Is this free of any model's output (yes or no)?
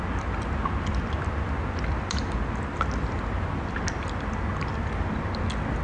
yes